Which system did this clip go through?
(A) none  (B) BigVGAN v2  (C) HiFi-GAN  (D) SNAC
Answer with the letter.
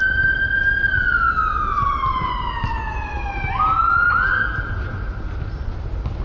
A